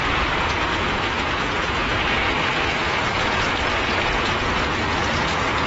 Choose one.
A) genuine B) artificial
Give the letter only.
B